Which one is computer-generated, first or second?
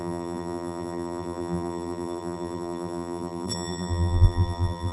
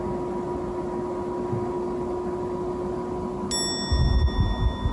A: first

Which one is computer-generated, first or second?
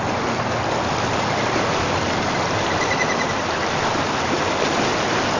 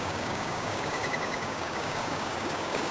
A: second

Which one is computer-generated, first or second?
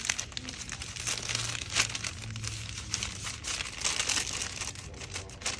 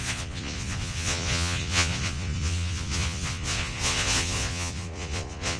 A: second